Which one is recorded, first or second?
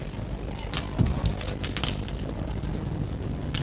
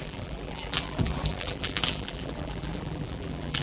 first